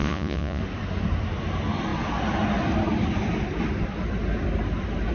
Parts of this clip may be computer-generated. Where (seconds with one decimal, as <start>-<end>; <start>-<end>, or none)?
0.0-0.6